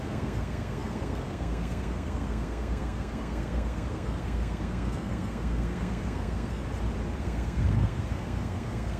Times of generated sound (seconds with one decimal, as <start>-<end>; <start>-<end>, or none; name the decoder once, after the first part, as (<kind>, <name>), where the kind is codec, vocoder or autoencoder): 0.0-6.6 (codec, SNAC); 7.2-9.0